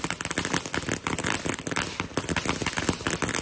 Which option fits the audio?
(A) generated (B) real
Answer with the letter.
B